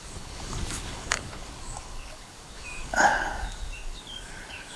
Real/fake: fake